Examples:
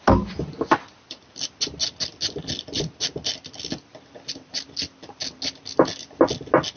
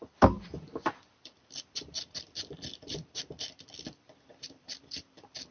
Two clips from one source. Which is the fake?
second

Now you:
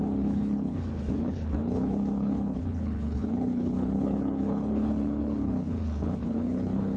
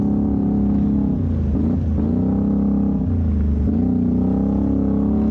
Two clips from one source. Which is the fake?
first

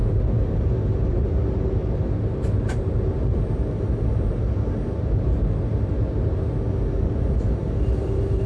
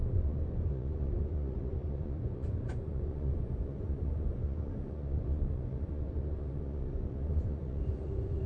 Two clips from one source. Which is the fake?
second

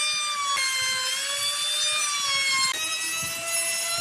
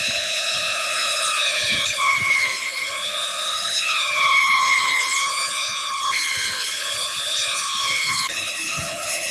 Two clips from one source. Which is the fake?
second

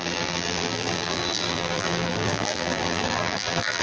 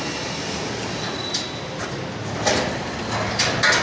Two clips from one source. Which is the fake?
first